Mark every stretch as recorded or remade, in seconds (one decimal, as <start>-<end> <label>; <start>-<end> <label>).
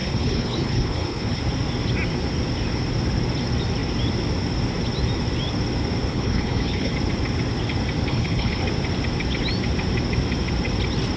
0.0-1.4 remade; 1.4-6.1 recorded; 6.1-6.9 remade; 6.9-8.1 recorded; 8.1-8.6 remade; 8.6-11.2 recorded